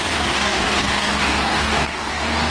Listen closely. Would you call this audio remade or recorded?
remade